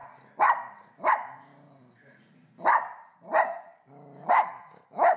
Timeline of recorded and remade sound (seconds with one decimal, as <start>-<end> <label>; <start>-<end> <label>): 0.0-1.1 recorded; 1.1-1.5 remade; 1.5-4.3 recorded; 4.3-5.2 remade